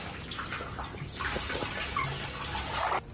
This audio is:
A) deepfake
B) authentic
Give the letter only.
B